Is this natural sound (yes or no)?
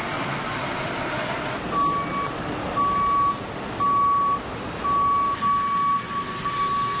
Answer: yes